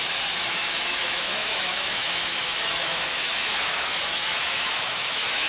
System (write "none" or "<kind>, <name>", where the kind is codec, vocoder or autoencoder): autoencoder, DAC-VAE